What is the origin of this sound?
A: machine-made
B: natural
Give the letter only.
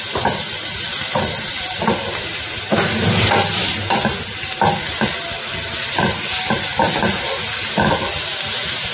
B